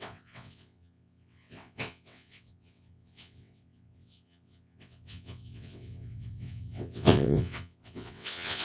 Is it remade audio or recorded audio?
remade